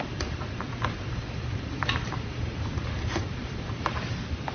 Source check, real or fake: fake